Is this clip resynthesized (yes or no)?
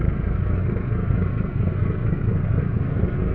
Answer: yes